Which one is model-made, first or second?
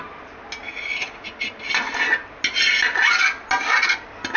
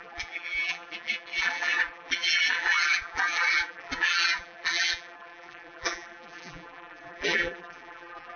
second